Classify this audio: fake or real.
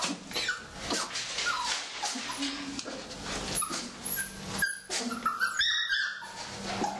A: real